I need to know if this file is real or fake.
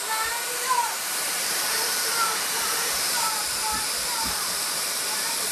fake